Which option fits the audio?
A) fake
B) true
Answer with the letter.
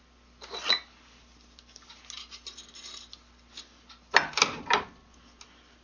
B